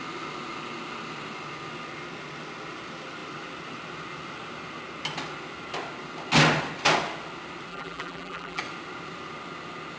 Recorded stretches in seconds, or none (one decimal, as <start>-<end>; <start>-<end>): 0.0-7.7; 8.6-10.0